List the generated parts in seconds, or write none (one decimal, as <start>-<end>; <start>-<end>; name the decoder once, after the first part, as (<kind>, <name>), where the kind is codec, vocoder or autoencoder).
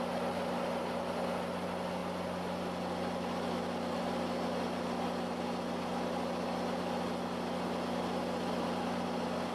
none